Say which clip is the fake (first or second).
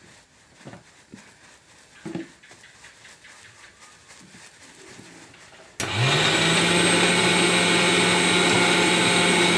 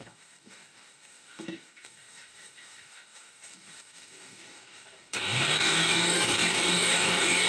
second